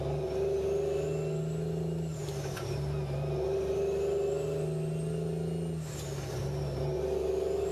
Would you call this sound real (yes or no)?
yes